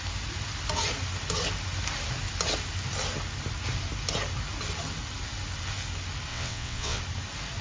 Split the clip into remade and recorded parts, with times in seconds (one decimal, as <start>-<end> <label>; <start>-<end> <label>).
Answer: 0.0-6.3 recorded; 6.3-7.0 remade; 7.0-7.6 recorded